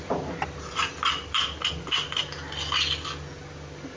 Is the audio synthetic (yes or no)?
no